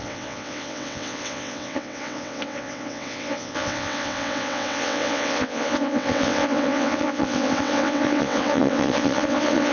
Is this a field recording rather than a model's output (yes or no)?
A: no